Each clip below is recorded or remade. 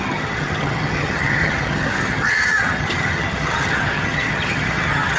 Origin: remade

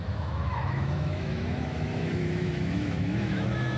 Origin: remade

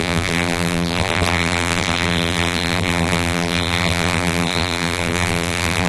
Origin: remade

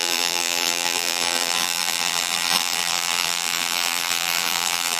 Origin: remade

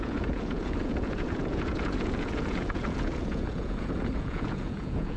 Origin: remade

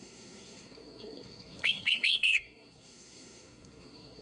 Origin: remade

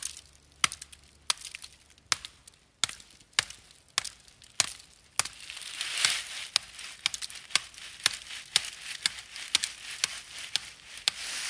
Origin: recorded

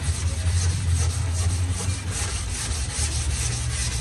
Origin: recorded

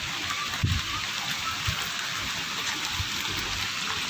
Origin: recorded